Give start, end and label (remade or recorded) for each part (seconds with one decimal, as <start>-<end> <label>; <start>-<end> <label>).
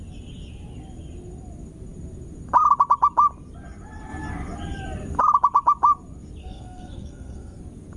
0.0-6.4 recorded; 6.4-7.6 remade; 7.6-8.0 recorded